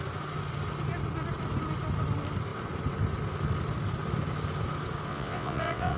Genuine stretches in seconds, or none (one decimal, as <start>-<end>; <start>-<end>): 0.0-5.1